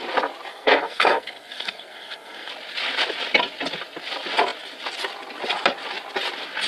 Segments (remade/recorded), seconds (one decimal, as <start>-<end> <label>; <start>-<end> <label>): 0.0-0.5 recorded; 0.5-2.5 remade; 2.5-6.7 recorded